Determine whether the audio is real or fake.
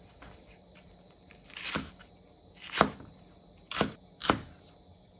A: real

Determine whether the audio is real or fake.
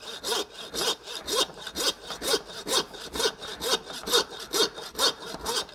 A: real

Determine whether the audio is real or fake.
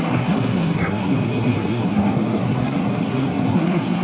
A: fake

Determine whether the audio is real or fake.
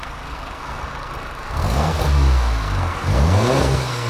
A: fake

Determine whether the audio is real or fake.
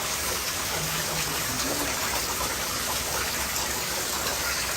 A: fake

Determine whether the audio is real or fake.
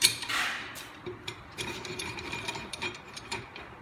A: fake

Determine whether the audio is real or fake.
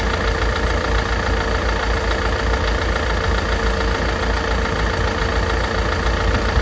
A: real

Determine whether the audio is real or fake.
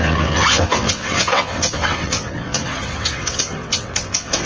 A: fake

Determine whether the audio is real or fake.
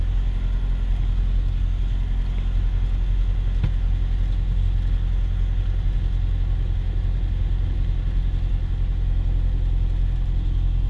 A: real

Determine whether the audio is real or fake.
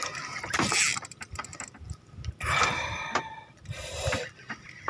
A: real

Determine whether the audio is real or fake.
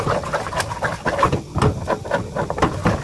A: real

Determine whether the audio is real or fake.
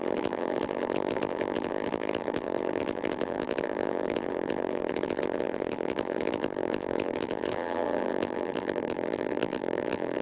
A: fake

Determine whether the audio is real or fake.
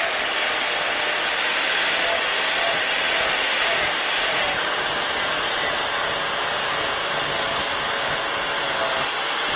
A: real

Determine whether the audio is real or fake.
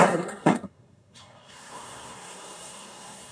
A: fake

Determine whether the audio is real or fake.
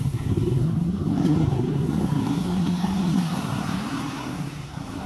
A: fake